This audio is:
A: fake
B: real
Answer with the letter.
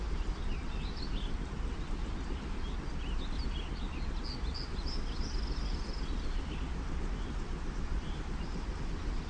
B